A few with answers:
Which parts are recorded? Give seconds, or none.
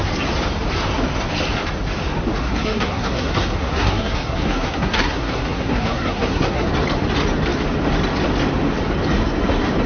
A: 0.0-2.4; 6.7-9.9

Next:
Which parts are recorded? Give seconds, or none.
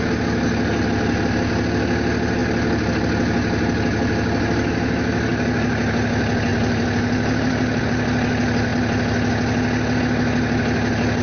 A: 0.0-6.5; 7.8-11.2